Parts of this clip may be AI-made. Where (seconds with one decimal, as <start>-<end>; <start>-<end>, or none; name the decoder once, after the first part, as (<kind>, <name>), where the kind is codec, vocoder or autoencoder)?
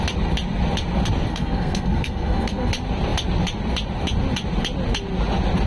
1.3-2.7 (codec, SNAC)